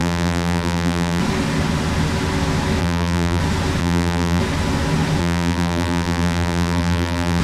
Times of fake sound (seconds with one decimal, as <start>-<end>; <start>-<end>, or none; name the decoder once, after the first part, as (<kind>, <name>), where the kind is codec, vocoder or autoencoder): 0.0-1.2 (vocoder, BigVGAN v2); 2.8-3.4; 3.8-4.4; 5.2-7.4